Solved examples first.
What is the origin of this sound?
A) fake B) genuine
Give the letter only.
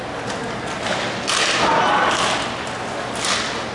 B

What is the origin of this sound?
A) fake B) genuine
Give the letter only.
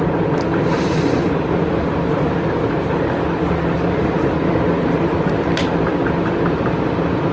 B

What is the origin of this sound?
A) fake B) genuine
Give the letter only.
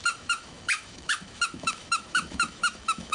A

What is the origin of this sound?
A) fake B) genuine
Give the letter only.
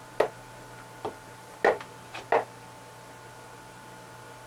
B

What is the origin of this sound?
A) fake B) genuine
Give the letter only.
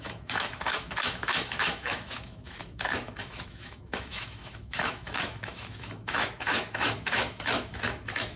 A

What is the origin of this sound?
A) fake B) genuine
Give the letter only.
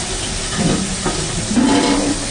B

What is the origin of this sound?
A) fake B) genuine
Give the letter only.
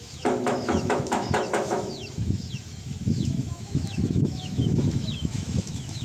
A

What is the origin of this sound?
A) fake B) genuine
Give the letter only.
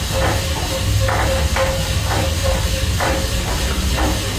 B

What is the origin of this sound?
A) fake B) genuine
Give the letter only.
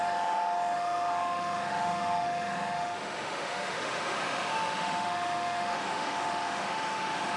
A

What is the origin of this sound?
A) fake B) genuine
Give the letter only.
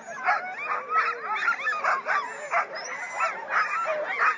B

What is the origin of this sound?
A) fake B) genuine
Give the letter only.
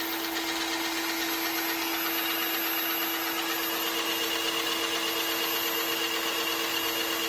B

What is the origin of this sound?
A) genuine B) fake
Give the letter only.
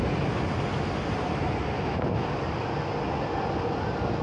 A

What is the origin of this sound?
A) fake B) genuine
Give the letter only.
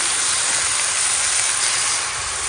B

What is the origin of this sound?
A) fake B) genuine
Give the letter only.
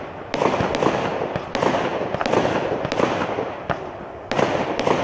B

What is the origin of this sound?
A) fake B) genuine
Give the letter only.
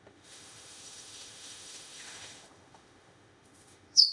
A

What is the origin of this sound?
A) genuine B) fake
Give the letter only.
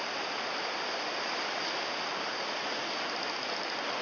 A